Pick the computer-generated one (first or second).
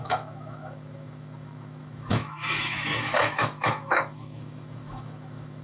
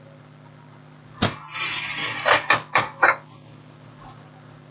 first